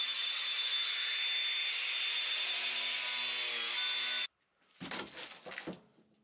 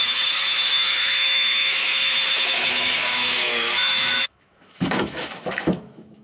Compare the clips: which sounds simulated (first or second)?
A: second